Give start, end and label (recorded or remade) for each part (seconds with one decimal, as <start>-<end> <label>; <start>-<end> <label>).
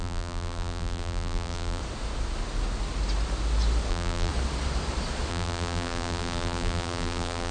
0.0-1.8 remade; 1.8-3.9 recorded; 3.9-4.3 remade; 4.3-5.3 recorded; 5.3-7.5 remade